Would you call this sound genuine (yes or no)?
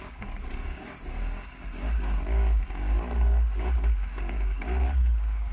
no